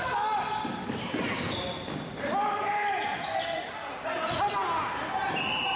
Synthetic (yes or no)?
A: no